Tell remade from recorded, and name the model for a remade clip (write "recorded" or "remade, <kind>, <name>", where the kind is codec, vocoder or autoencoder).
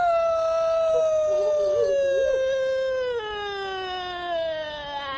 recorded